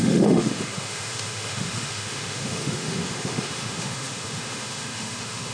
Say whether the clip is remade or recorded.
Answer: remade